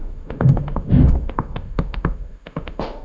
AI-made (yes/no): yes